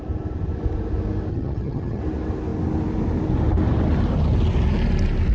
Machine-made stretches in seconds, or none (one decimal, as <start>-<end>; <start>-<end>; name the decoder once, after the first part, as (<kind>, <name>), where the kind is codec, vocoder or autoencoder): 1.3-2.0 (vocoder, HiFi-GAN)